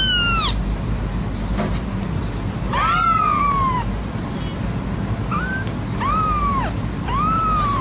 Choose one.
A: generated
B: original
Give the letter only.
B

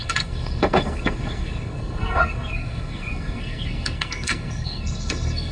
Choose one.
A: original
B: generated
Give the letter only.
B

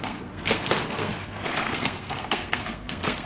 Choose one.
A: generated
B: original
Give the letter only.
A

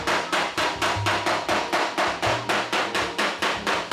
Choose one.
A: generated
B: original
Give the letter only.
B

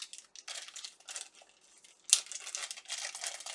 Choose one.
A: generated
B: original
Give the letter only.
B